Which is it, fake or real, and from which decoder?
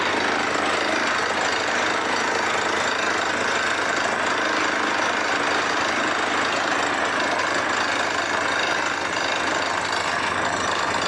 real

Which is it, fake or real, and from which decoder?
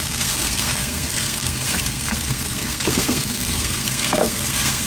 fake, codec, SNAC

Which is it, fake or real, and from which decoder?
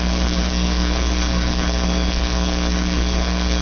fake, codec, SNAC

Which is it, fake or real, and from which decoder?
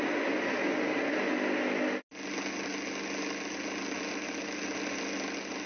real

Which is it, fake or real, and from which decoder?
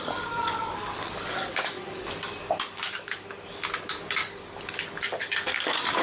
fake, codec, DAC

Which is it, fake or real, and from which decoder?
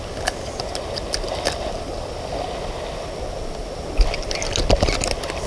real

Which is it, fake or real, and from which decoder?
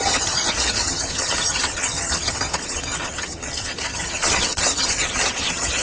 fake, vocoder, HiFi-GAN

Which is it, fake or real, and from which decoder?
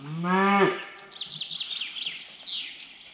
real